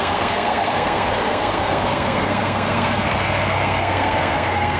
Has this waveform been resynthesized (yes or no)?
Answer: yes